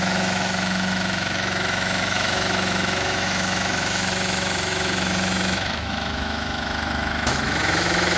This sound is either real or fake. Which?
fake